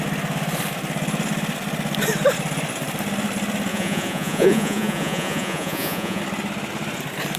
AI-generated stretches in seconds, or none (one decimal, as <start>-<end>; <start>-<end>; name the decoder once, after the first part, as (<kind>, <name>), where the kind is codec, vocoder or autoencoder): 3.7-6.2 (vocoder, Vocos)